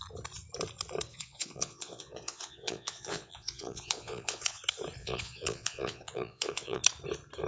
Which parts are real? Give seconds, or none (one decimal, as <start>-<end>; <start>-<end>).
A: 0.0-1.1; 4.6-5.0; 6.8-7.5